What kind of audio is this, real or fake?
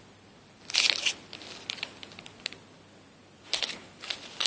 real